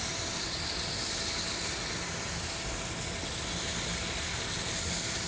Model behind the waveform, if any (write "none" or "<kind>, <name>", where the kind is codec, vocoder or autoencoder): none